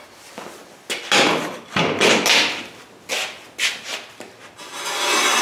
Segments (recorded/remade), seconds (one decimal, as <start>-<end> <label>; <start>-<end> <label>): 0.0-5.4 recorded